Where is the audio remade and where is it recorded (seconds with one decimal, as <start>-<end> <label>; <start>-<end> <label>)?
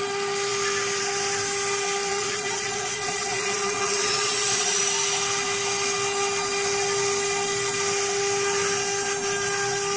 0.0-2.1 recorded; 2.1-4.8 remade; 4.8-10.0 recorded